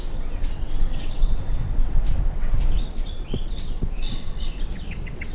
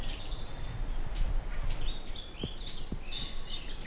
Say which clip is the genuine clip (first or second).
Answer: second